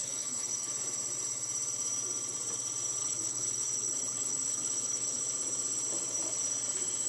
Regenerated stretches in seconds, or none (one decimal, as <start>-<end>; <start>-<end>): 0.0-0.7; 3.0-5.2